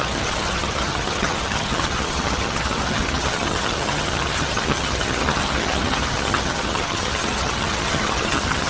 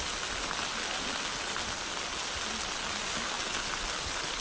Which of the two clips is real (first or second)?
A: second